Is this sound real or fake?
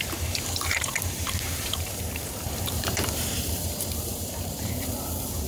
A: fake